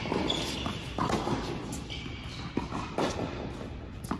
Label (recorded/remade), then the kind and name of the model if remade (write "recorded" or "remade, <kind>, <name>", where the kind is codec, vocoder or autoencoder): recorded